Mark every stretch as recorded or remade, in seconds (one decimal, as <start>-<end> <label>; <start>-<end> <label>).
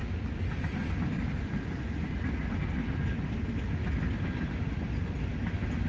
0.0-5.9 recorded